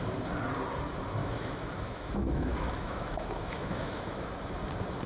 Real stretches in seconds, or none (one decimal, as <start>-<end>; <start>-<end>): 0.0-1.2; 4.3-5.1